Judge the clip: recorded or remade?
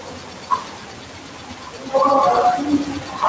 recorded